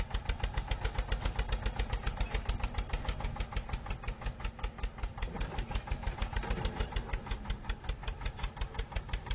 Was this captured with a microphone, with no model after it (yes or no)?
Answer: yes